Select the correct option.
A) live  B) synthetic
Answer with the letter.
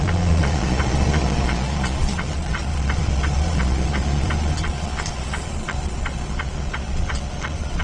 B